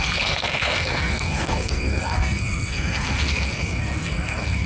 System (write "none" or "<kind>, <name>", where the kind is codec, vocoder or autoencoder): codec, SNAC